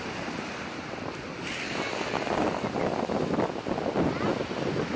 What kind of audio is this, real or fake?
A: real